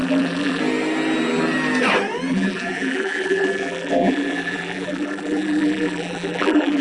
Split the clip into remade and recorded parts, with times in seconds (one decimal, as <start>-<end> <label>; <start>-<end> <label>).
0.0-0.6 remade; 0.6-2.3 recorded; 2.3-6.8 remade